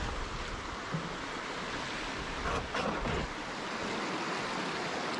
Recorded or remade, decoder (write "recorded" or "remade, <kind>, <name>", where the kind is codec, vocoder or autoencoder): recorded